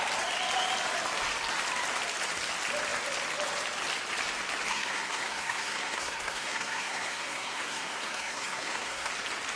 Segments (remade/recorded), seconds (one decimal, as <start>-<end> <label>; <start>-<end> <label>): 0.0-4.7 recorded; 4.7-9.1 remade; 9.1-9.6 recorded